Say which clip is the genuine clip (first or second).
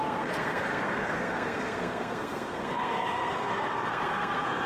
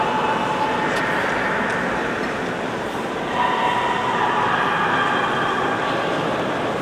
second